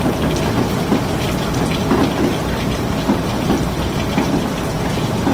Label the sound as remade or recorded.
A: recorded